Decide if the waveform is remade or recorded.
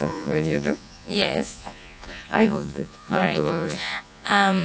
remade